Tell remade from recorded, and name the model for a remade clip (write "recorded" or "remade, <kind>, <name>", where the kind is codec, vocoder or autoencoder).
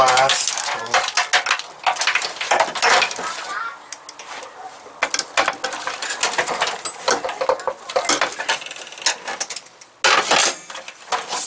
recorded